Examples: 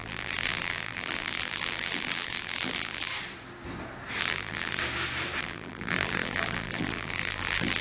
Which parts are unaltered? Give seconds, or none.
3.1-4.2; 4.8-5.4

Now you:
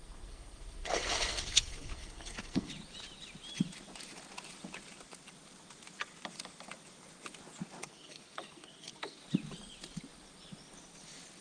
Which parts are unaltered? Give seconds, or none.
2.7-7.8; 9.2-11.4

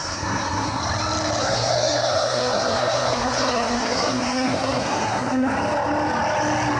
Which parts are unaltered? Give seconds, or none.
0.8-1.4; 5.5-6.8